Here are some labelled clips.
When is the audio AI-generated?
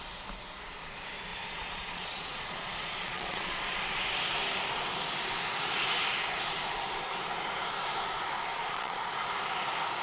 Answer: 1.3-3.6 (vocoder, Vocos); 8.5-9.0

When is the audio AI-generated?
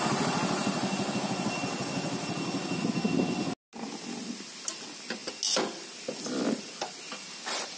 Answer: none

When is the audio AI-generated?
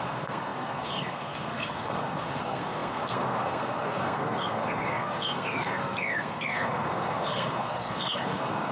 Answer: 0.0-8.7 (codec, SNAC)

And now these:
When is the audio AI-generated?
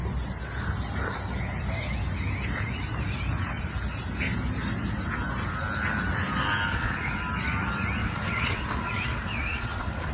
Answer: 6.7-7.2 (vocoder, WaveNeXt); 8.0-10.1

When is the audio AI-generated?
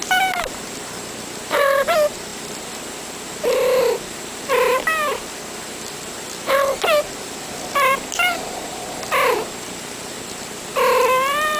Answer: 0.0-11.6 (vocoder, BigVGAN v2)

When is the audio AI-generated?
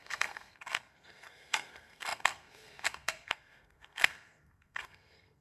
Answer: 0.0-5.4 (codec, SNAC)